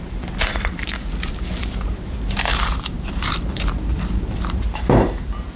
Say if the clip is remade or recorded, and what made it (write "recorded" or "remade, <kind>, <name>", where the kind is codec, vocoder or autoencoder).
remade, vocoder, BigVGAN v2